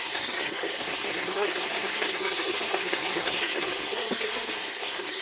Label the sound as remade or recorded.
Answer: remade